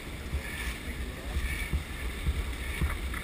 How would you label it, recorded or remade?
recorded